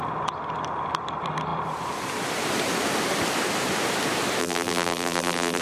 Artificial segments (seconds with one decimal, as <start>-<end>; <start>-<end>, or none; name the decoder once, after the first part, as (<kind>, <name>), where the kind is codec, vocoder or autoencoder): 4.4-5.6 (vocoder, BigVGAN v2)